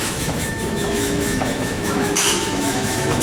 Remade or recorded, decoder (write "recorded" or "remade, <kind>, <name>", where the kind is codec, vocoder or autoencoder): remade, autoencoder, DAC-VAE